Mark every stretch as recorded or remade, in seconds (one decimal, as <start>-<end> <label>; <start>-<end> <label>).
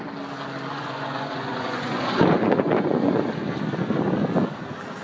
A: 0.0-0.7 recorded; 0.7-3.2 remade; 3.2-5.0 recorded